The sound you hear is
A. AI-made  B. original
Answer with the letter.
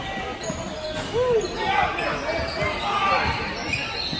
B